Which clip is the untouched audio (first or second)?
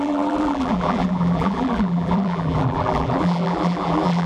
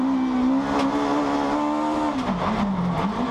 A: second